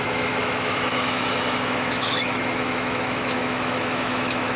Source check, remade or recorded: remade